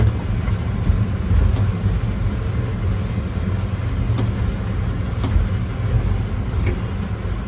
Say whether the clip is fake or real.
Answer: real